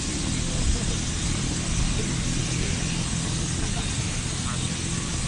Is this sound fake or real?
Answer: real